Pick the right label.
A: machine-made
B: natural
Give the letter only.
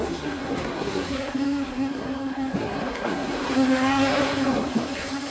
A